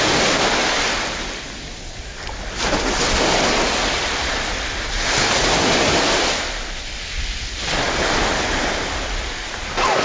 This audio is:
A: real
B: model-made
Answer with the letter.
A